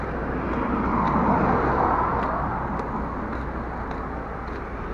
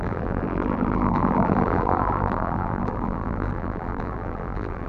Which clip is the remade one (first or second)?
second